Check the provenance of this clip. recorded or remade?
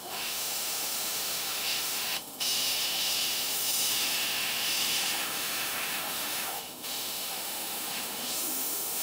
remade